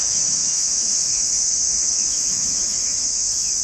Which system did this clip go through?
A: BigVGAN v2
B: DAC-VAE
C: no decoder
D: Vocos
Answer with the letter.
B